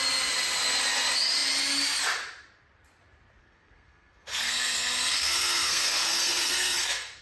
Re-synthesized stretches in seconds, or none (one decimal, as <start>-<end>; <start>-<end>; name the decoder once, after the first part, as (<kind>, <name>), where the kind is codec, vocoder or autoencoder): 3.4-7.2 (codec, SNAC)